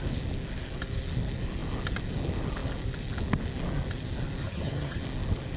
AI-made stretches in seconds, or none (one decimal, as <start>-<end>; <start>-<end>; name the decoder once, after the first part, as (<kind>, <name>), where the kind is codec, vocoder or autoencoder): 4.4-5.0 (vocoder, HiFi-GAN)